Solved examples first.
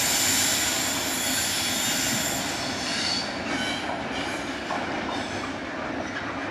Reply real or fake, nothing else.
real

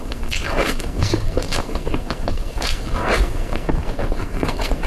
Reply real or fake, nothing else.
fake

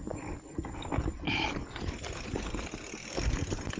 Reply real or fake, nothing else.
real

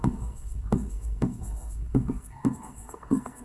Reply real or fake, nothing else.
fake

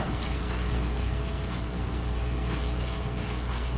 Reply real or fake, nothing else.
fake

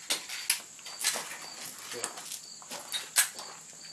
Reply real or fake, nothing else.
real